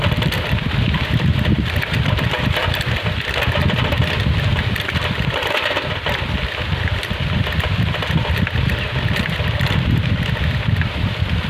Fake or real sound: fake